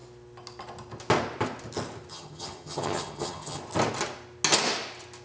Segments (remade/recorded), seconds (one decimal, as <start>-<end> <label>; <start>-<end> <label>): 0.0-2.1 recorded; 2.1-3.6 remade; 3.6-5.2 recorded